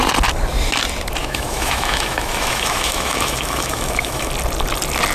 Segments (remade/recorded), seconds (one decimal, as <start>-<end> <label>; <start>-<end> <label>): 0.0-1.2 recorded; 1.2-4.3 remade; 4.3-5.1 recorded